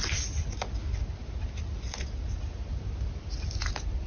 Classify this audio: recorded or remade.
recorded